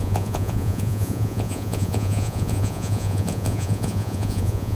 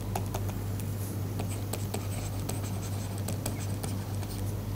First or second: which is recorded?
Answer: second